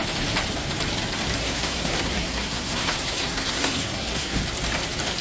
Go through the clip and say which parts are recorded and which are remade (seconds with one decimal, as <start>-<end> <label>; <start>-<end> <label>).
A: 0.0-1.4 recorded; 1.4-4.4 remade; 4.4-5.2 recorded